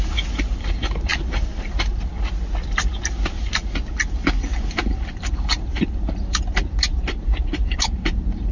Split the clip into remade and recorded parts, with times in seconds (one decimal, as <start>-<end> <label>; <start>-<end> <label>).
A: 0.0-2.1 remade; 2.1-5.3 recorded; 5.3-8.5 remade